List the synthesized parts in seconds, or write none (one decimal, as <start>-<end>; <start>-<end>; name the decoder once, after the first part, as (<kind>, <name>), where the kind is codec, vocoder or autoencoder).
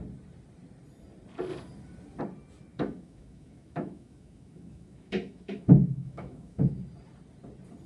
2.7-6.8 (autoencoder, DAC-VAE)